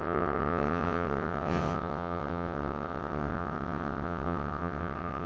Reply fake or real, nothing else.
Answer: fake